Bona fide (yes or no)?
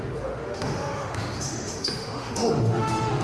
no